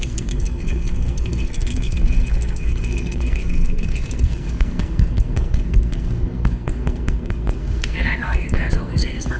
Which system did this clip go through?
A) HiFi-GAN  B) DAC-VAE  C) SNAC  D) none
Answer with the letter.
C